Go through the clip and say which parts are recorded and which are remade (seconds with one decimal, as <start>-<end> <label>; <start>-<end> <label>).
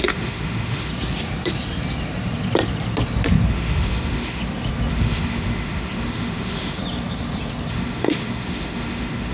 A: 0.0-0.9 remade; 0.9-3.5 recorded; 3.5-4.4 remade; 4.4-4.9 recorded; 4.9-6.8 remade; 6.8-7.7 recorded; 7.7-9.3 remade